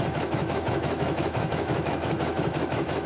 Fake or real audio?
fake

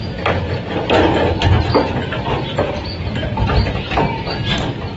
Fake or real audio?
real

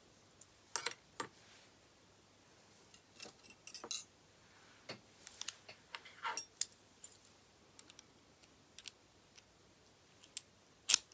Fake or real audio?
real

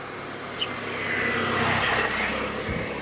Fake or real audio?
real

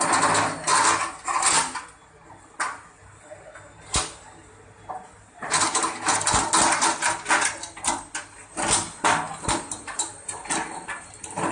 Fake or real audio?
real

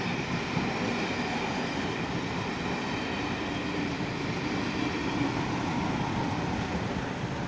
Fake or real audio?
real